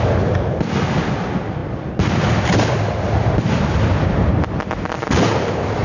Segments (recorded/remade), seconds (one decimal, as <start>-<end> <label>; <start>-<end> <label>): 0.0-5.8 recorded